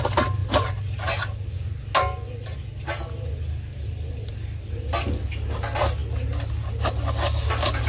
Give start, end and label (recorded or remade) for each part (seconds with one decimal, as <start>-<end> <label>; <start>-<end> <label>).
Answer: 0.0-7.9 recorded